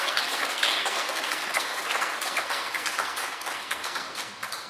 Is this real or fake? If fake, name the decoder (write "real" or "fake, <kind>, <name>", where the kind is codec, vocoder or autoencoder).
fake, codec, SNAC